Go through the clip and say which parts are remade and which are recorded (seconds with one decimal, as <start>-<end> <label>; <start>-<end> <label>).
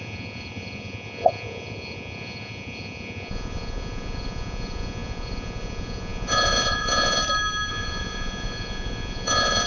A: 0.0-7.2 remade; 7.2-7.7 recorded; 7.7-9.7 remade